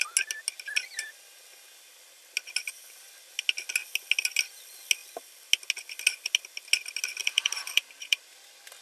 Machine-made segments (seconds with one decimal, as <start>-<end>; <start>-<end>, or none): 7.2-8.2